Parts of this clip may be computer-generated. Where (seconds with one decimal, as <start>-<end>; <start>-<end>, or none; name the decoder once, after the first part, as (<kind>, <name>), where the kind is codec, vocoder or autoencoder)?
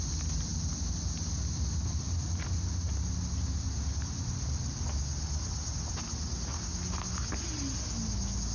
none